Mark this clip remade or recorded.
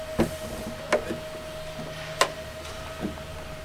recorded